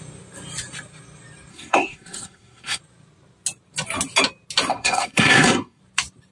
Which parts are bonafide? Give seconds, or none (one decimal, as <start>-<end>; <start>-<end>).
0.0-1.5; 2.8-4.7; 5.8-6.3